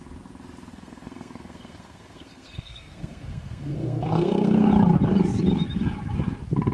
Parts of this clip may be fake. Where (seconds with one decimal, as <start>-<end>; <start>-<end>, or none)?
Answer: 0.7-4.7